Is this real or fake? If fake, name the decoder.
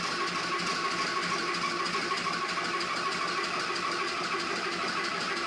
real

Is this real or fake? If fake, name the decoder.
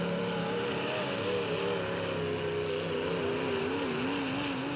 real